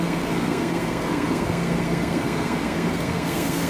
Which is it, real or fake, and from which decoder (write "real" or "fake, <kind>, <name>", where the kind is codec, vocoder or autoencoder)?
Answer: fake, codec, SNAC